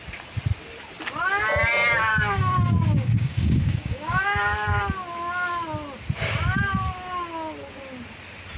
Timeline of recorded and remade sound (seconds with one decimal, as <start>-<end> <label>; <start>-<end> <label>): 0.0-2.1 recorded; 2.1-4.8 remade; 4.8-8.6 recorded